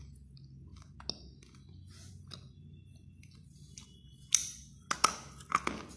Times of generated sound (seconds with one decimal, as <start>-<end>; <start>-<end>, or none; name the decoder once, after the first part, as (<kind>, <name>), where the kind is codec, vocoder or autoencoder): none